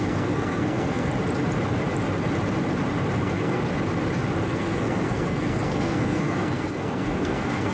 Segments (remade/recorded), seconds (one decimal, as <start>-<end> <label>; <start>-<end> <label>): 0.0-1.1 remade; 1.1-3.2 recorded; 3.2-3.6 remade; 3.6-4.4 recorded; 4.4-7.7 remade